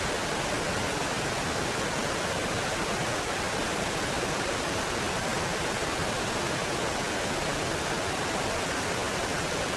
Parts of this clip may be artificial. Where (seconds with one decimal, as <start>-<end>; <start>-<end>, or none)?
none